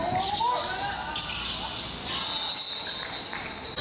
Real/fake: real